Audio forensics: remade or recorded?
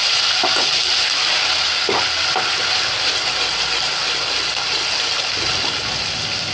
recorded